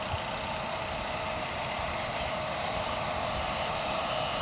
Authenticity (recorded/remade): recorded